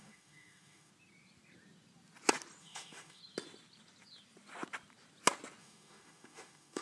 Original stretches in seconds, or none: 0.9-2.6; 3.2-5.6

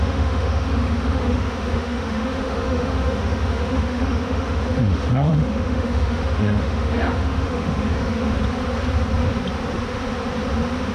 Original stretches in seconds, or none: 8.4-10.9

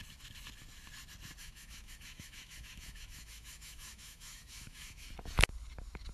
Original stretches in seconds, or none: 0.0-1.4; 5.1-6.1